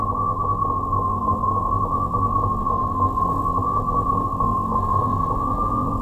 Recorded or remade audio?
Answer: recorded